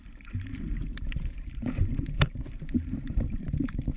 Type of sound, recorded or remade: remade